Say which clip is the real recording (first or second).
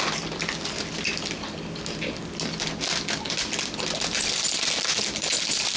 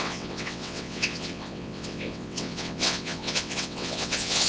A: first